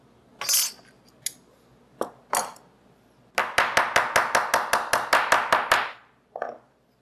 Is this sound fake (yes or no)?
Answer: no